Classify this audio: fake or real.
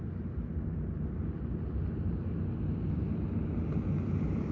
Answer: real